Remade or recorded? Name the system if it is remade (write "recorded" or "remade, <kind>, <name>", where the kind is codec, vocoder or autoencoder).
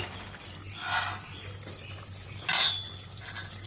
recorded